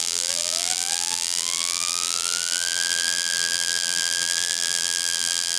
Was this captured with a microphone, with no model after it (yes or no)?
no